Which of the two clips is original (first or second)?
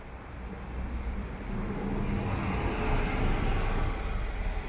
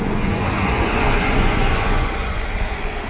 first